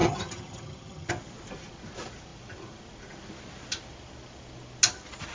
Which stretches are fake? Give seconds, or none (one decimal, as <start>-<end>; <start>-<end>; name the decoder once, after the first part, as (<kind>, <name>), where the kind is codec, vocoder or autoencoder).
0.0-1.1 (vocoder, HiFi-GAN)